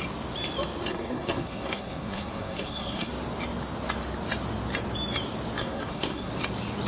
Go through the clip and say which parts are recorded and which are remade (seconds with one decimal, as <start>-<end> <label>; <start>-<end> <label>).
0.0-0.9 recorded; 0.9-3.1 remade; 3.1-5.6 recorded; 5.6-6.3 remade; 6.3-6.9 recorded